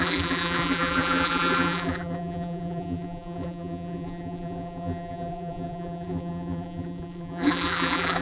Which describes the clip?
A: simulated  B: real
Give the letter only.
A